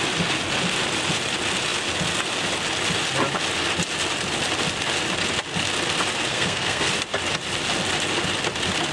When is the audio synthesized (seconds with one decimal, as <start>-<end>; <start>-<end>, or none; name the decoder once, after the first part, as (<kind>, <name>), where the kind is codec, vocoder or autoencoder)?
6.3-6.9 (codec, SNAC)